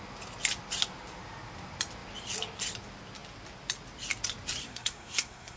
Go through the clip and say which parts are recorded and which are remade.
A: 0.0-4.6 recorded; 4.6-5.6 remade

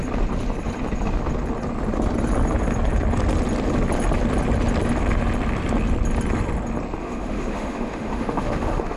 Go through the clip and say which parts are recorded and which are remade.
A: 0.0-7.0 recorded; 7.0-9.0 remade

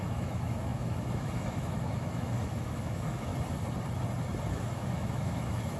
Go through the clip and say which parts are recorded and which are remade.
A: 0.0-3.3 remade; 3.3-4.5 recorded; 4.5-5.8 remade

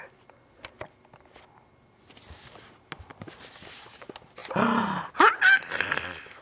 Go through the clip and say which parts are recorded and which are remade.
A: 0.0-6.4 recorded

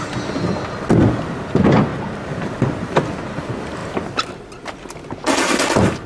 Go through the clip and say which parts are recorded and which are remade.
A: 0.0-1.9 recorded; 1.9-3.4 remade; 3.4-6.1 recorded

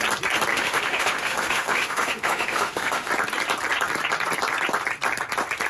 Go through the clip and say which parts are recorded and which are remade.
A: 0.0-0.5 recorded; 0.5-3.1 remade; 3.1-5.7 recorded

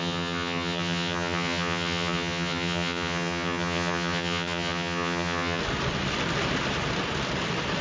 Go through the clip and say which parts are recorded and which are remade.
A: 0.0-5.6 remade; 5.6-7.8 recorded

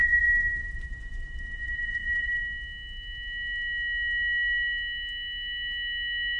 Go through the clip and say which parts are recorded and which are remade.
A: 0.0-2.4 remade; 2.4-6.4 recorded